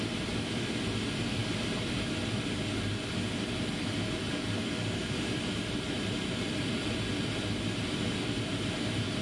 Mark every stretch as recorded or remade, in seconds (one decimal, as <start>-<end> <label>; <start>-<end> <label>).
0.0-9.2 recorded